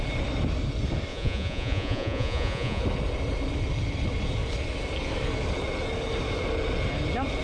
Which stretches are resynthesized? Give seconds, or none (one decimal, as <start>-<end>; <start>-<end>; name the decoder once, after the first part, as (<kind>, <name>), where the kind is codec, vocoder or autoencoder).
1.1-2.8 (vocoder, Vocos)